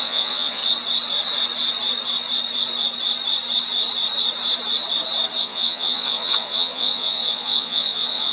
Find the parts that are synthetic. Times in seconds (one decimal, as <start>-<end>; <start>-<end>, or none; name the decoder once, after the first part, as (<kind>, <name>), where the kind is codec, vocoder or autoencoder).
0.0-0.6 (vocoder, Vocos); 5.4-8.3